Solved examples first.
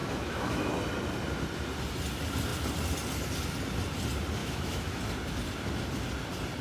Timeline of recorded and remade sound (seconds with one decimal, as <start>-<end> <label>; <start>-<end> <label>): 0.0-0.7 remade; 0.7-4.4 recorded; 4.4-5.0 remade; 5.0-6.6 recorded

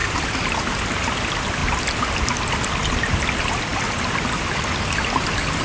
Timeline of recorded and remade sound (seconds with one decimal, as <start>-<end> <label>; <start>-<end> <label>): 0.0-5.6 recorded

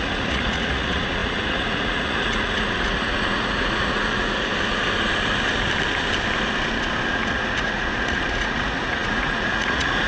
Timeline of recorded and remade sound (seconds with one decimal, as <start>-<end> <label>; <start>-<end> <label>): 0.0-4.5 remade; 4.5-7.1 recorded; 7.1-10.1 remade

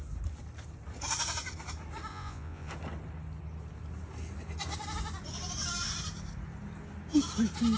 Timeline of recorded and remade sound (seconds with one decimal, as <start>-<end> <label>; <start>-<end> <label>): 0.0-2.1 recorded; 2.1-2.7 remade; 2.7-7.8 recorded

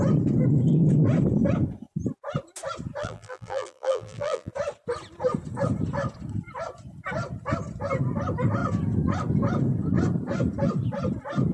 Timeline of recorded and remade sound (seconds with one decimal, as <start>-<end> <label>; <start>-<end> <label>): 0.0-3.0 recorded; 3.0-4.5 remade; 4.5-11.5 recorded

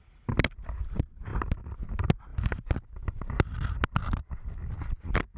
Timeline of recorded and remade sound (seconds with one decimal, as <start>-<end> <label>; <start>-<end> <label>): 0.0-5.4 recorded